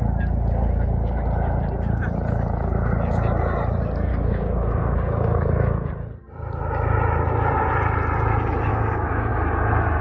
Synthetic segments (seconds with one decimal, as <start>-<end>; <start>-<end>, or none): 4.1-5.9; 8.7-9.3